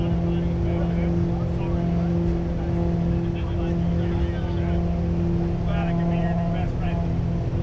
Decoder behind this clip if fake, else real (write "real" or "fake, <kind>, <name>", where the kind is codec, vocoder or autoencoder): real